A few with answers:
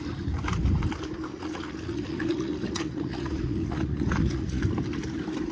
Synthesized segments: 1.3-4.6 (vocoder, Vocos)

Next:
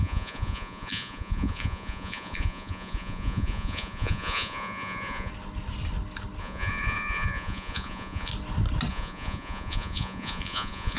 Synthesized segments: 0.0-5.3 (vocoder, Vocos); 6.4-8.3; 8.9-11.0